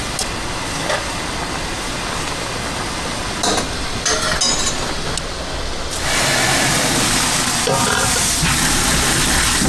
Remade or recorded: recorded